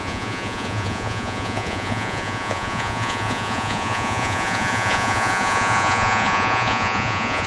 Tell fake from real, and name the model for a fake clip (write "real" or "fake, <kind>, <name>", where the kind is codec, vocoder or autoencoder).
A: fake, vocoder, Vocos